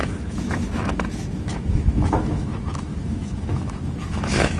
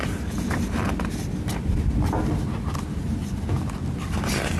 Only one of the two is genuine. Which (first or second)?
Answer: second